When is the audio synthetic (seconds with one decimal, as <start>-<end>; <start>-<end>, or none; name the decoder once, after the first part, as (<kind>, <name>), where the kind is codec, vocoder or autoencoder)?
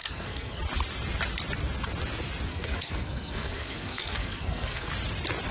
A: 0.0-0.6 (codec, SNAC); 2.5-4.9